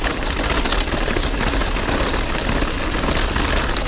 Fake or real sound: real